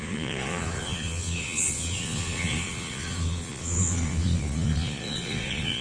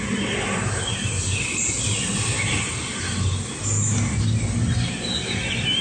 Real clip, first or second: second